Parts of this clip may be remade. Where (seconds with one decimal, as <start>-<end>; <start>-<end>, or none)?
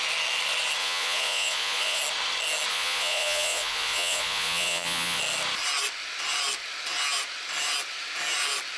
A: 0.8-2.0; 2.7-5.2